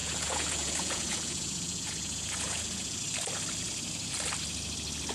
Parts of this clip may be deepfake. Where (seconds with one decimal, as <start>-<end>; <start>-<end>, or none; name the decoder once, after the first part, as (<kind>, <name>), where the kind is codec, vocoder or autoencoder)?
0.0-3.0 (vocoder, Vocos)